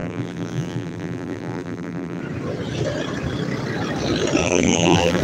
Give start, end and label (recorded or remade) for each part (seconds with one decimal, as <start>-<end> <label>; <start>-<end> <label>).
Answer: 0.0-2.2 remade; 2.2-4.4 recorded; 4.4-5.2 remade

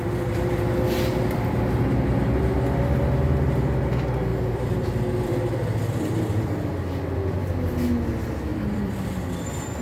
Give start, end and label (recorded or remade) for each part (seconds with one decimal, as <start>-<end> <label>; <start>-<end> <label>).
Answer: 0.0-4.3 recorded; 4.3-6.7 remade; 6.7-8.5 recorded; 8.5-9.1 remade; 9.1-9.8 recorded

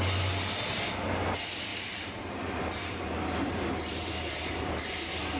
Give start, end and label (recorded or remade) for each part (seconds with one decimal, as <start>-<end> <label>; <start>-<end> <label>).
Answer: 0.0-1.7 recorded; 1.7-4.9 remade; 4.9-5.4 recorded

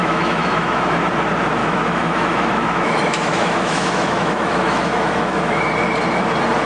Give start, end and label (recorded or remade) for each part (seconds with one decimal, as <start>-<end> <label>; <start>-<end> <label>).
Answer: 0.0-1.1 remade; 1.1-1.6 recorded; 1.6-5.6 remade; 5.6-6.7 recorded